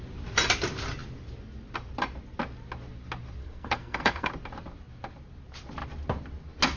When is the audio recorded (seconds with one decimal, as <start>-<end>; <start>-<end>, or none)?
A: 0.0-3.4; 4.3-6.8

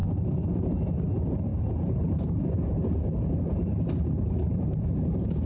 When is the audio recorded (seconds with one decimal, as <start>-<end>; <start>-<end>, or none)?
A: 0.0-1.5; 4.8-5.5

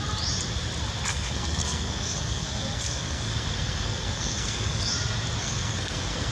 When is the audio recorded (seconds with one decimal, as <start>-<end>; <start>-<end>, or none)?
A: 0.0-1.1; 4.9-5.4

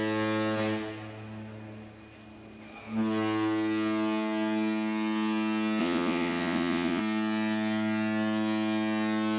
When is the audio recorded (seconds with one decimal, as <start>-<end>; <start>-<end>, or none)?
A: 0.0-5.8; 7.0-9.4

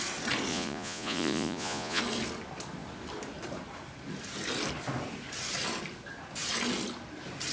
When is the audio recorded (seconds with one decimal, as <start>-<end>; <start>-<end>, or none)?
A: 0.0-0.5; 2.0-7.5

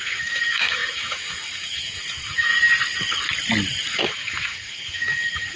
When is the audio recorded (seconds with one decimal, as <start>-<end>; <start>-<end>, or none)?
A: 2.5-4.0

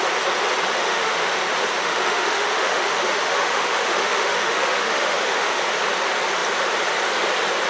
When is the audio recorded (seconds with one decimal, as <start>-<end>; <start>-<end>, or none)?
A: 0.0-0.8; 1.3-1.8; 5.6-7.7

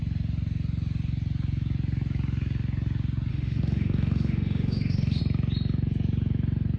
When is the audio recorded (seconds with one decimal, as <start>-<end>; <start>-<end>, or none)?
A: 0.0-3.3; 5.2-6.8